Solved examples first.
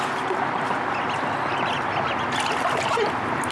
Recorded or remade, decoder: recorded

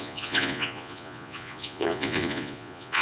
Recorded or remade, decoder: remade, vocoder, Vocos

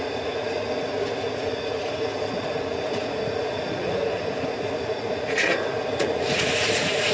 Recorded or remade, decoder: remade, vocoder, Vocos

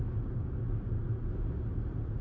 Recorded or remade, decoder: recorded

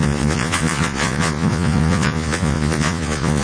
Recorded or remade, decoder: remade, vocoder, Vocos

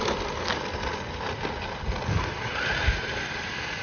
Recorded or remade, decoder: recorded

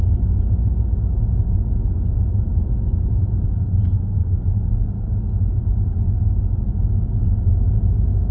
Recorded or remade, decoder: recorded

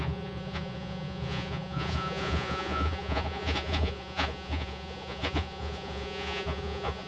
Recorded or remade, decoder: remade, vocoder, Vocos